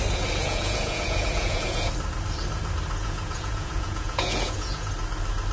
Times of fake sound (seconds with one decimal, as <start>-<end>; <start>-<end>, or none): 0.4-1.9; 3.0-4.9